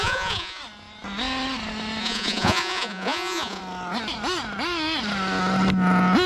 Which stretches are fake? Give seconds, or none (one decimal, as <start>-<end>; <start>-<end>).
0.0-0.6; 2.0-3.6